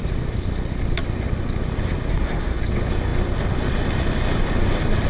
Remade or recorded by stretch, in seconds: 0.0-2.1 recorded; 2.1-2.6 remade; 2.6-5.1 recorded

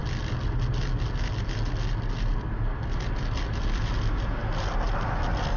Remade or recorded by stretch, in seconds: 0.0-5.6 recorded